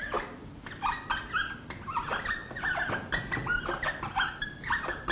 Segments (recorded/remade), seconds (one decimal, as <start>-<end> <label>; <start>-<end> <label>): 0.0-5.1 recorded